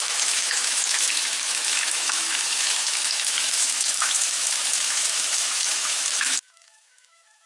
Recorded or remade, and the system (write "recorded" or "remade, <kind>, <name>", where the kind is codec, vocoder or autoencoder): remade, autoencoder, DAC-VAE